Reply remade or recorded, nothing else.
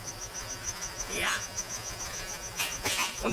remade